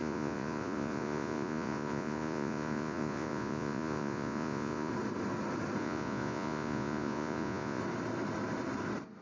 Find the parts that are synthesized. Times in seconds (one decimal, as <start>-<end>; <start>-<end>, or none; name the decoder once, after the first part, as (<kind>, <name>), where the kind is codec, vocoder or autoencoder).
0.0-4.9 (vocoder, Vocos); 5.8-7.8